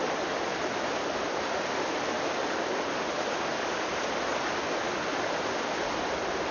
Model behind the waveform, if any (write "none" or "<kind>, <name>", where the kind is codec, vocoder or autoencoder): none